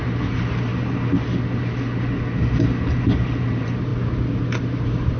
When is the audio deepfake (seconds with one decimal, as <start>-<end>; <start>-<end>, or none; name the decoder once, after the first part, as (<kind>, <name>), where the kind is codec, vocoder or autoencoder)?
0.0-0.7 (vocoder, BigVGAN v2); 3.4-3.9; 4.6-5.2